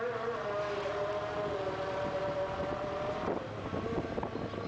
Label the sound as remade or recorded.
recorded